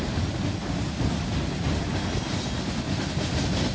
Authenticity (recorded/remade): recorded